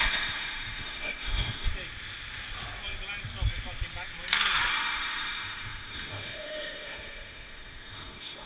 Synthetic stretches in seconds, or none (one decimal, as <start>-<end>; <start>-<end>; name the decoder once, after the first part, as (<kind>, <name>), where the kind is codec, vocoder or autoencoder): 0.0-1.7 (autoencoder, DAC-VAE); 4.7-8.5